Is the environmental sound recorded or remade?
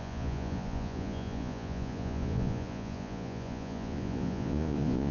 remade